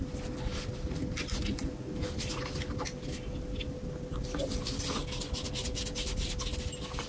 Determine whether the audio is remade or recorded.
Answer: recorded